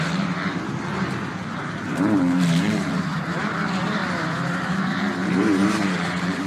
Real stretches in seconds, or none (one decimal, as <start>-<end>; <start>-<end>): none